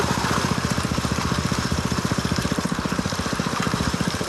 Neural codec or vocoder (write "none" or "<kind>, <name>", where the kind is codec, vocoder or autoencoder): vocoder, BigVGAN v2